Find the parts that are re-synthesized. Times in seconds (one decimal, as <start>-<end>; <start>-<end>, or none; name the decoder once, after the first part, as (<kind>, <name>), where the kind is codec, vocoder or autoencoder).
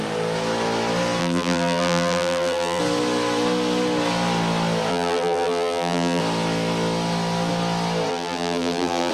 1.2-2.8 (vocoder, BigVGAN v2); 4.9-6.2; 8.1-9.1